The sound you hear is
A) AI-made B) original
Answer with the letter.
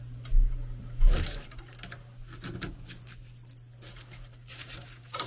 B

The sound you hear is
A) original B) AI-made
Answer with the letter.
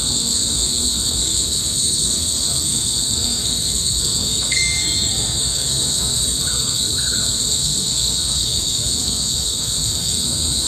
B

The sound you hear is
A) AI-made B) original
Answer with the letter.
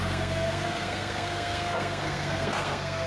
A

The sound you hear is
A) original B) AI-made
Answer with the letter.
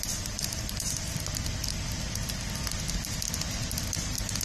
A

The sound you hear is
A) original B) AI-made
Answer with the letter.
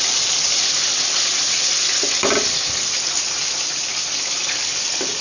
A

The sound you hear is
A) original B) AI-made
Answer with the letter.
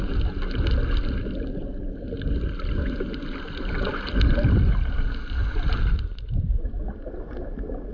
A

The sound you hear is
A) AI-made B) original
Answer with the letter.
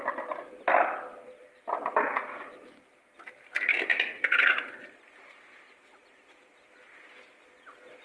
B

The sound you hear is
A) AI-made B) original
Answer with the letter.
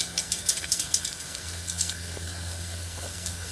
A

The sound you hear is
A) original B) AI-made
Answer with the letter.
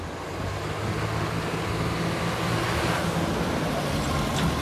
A